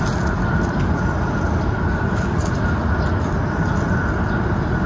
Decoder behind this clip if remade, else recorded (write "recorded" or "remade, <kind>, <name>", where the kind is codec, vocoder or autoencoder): recorded